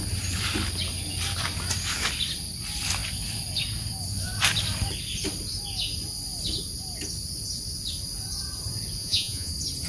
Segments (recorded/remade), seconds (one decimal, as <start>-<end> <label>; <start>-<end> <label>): 0.0-9.0 recorded; 9.0-9.5 remade; 9.5-9.9 recorded